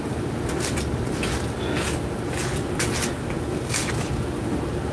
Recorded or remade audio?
recorded